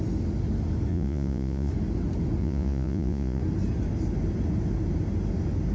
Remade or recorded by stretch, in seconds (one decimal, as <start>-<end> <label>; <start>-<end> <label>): 0.0-0.9 recorded; 0.9-1.7 remade; 1.7-2.4 recorded; 2.4-3.4 remade; 3.4-5.7 recorded